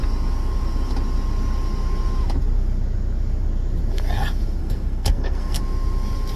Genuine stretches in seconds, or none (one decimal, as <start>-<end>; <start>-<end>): 0.0-4.6; 5.6-6.4